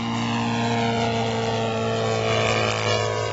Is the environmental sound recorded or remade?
recorded